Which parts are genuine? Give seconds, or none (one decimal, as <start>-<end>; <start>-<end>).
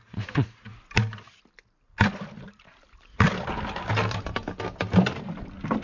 0.0-4.0; 4.6-5.8